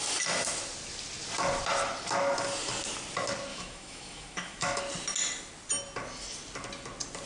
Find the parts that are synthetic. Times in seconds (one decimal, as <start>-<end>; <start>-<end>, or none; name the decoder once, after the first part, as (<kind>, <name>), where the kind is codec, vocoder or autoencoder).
3.5-4.8 (autoencoder, DAC-VAE)